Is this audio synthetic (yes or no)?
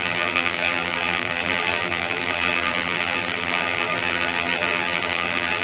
yes